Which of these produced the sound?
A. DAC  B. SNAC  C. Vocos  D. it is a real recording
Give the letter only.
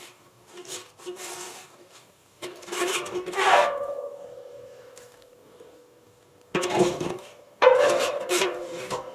A